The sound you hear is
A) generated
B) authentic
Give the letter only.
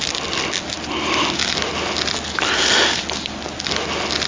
B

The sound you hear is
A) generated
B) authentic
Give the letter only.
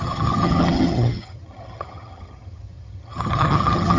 A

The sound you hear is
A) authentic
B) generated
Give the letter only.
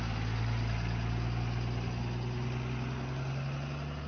A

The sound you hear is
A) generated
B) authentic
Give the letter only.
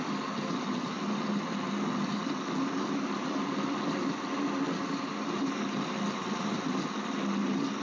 B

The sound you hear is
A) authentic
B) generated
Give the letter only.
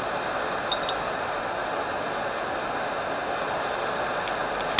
A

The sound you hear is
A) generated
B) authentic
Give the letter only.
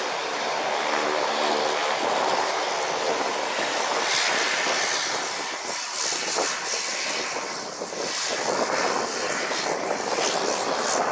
B